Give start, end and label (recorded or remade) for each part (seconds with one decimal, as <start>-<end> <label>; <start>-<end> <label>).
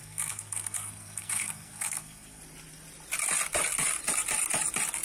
0.0-2.4 remade; 2.4-5.0 recorded